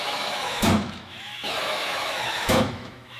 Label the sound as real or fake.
fake